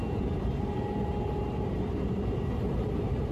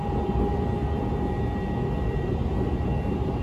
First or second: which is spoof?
first